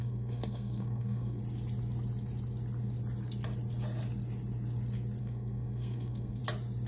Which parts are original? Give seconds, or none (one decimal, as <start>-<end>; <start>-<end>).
1.4-5.2; 6.4-6.9